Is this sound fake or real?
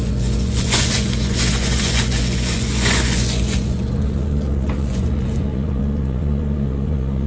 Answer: fake